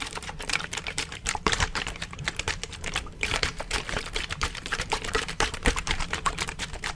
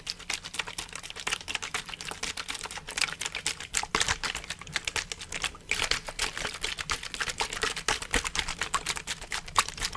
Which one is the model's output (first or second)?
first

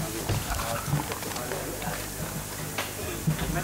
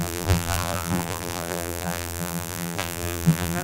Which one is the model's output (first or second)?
second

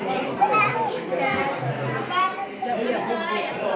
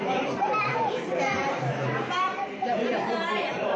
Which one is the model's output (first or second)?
second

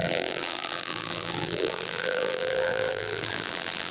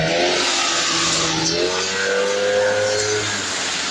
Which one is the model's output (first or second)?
first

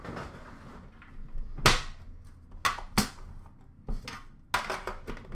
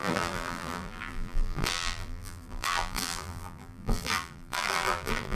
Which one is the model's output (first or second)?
second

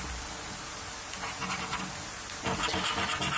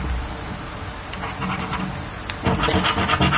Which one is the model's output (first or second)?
second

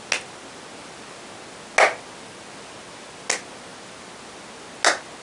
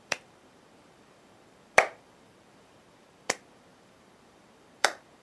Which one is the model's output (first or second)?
second